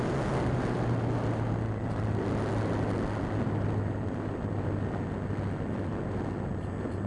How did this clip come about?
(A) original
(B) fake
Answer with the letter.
A